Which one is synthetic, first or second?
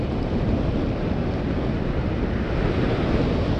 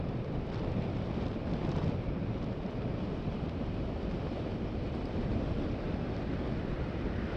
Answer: second